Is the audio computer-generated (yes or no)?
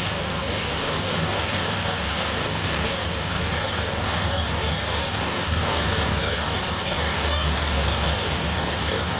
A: yes